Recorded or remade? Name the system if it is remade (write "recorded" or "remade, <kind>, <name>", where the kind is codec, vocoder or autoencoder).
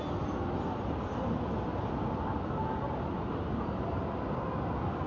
recorded